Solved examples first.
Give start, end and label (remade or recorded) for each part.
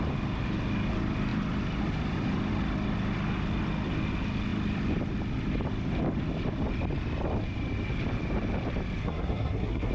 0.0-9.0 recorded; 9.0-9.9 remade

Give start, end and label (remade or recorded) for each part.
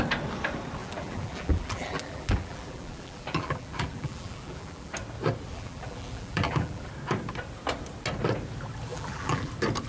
0.0-0.8 recorded; 0.8-4.9 remade; 4.9-5.5 recorded; 5.5-6.9 remade; 6.9-8.9 recorded; 8.9-9.5 remade; 9.5-9.9 recorded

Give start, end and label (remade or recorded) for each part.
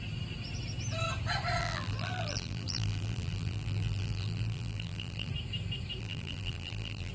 0.0-1.6 recorded; 1.6-5.3 remade; 5.3-6.0 recorded; 6.0-7.1 remade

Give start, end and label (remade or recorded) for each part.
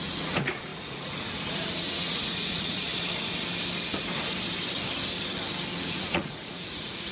0.0-2.9 remade; 2.9-5.8 recorded; 5.8-7.1 remade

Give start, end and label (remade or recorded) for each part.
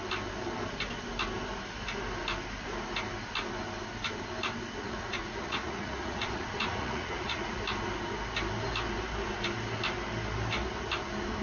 0.0-4.8 recorded; 4.8-7.6 remade; 7.6-11.4 recorded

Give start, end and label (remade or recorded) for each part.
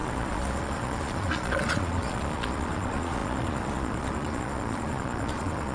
0.0-5.7 remade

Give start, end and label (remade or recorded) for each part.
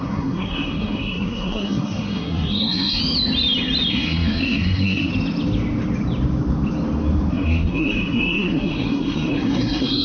0.0-3.0 remade; 3.0-3.9 recorded; 3.9-5.1 remade; 5.1-7.3 recorded; 7.3-10.0 remade